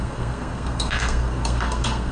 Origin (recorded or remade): remade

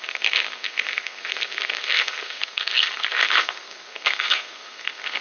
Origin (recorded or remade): remade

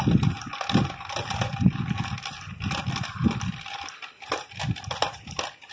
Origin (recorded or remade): recorded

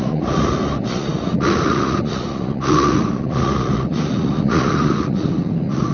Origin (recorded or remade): remade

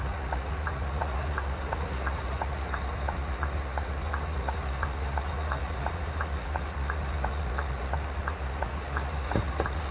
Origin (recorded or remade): remade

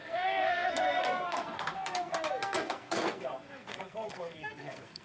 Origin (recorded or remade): remade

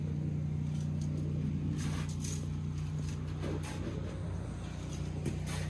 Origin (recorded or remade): recorded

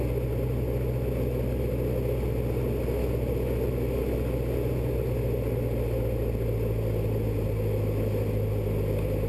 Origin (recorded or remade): recorded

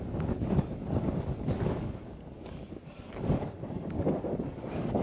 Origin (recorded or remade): remade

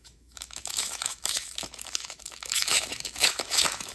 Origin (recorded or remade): remade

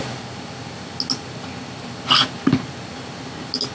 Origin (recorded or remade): recorded